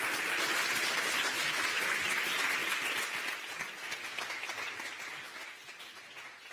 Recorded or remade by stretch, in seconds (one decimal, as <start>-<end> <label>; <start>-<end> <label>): 0.0-0.8 recorded; 0.8-1.4 remade; 1.4-6.5 recorded